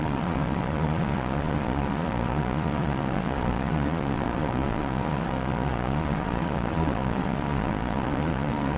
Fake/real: fake